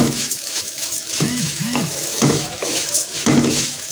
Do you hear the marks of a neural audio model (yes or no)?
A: yes